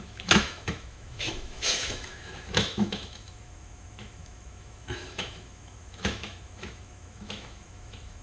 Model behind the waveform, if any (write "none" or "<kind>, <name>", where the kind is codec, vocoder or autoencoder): autoencoder, DAC-VAE